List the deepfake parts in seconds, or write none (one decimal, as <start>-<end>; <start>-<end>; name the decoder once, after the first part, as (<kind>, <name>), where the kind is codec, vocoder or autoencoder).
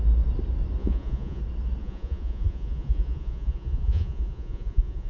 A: 0.8-1.4 (vocoder, Vocos); 1.8-5.1